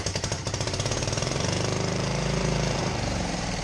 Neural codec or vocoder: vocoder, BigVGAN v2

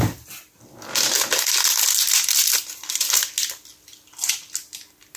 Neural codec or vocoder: none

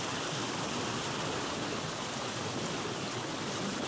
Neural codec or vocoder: none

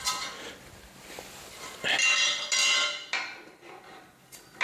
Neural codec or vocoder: none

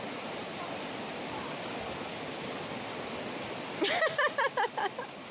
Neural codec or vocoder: none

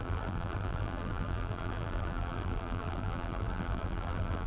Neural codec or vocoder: vocoder, BigVGAN v2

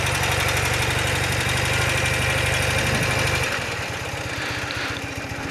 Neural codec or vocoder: none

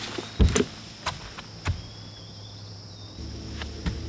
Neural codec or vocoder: none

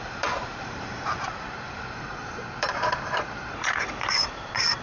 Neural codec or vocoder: vocoder, BigVGAN v2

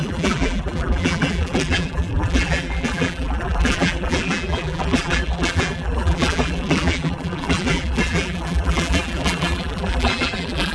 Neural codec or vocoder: vocoder, BigVGAN v2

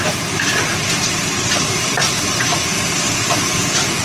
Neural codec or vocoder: vocoder, BigVGAN v2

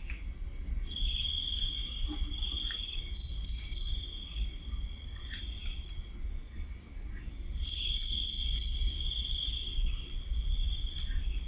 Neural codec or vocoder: none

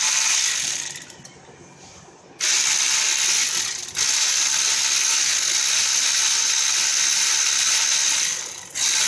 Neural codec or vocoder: none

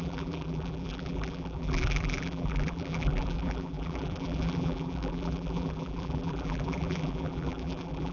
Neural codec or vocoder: vocoder, BigVGAN v2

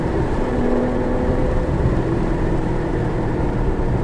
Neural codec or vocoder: vocoder, BigVGAN v2